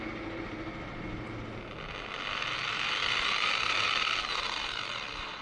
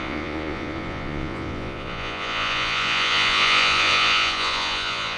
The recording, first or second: first